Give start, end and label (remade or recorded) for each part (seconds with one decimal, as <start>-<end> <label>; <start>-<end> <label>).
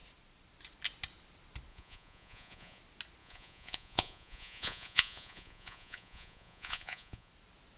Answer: 0.0-1.7 recorded; 1.7-2.8 remade; 2.8-3.2 recorded; 3.2-7.3 remade; 7.3-7.8 recorded